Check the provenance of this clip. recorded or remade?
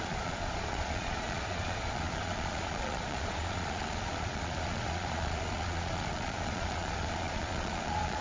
remade